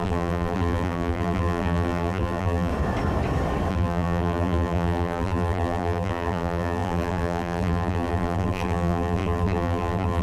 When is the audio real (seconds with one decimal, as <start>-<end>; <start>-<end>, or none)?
2.7-3.7